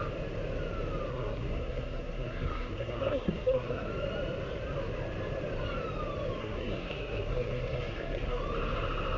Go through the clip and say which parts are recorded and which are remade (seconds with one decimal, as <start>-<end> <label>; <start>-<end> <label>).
0.0-1.1 recorded; 1.1-3.9 remade; 3.9-6.4 recorded; 6.4-8.4 remade; 8.4-9.2 recorded